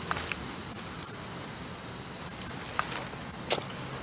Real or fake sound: real